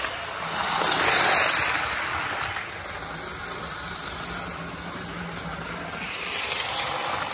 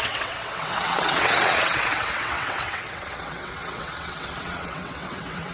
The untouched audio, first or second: first